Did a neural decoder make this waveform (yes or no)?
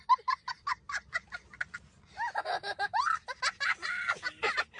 no